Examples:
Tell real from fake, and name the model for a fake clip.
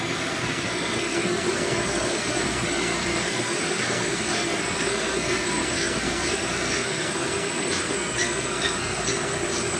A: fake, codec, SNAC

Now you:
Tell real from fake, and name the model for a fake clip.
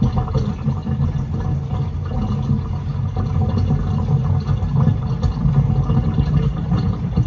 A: real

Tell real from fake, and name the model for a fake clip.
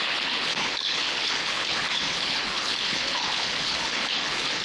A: fake, codec, HILCodec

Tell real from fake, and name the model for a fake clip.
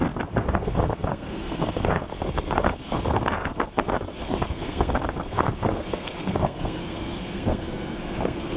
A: fake, codec, SNAC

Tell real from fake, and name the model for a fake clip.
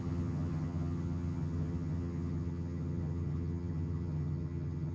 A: fake, vocoder, HiFi-GAN